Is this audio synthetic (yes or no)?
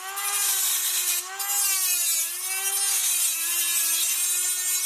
no